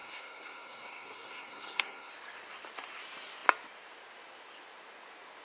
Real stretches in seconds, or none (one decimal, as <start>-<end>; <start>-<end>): 2.1-5.4